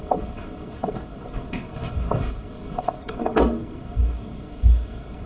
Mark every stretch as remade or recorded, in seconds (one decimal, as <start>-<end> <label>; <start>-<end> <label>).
0.0-5.3 remade